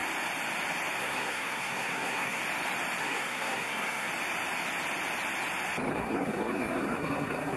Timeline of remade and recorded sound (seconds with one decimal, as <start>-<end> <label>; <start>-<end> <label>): 0.0-1.0 recorded; 1.0-2.4 remade; 2.4-3.0 recorded; 3.0-4.1 remade; 4.1-5.9 recorded; 5.9-7.6 remade